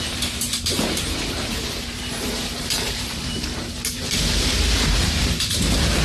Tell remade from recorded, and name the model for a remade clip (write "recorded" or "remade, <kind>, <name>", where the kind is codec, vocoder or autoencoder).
remade, vocoder, BigVGAN v2